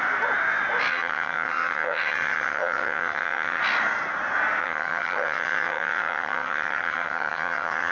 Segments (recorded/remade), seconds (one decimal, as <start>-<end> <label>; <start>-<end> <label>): 0.0-0.9 recorded; 0.9-3.6 remade; 3.6-4.6 recorded; 4.6-7.9 remade